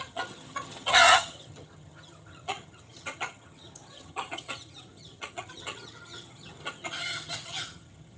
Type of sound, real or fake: fake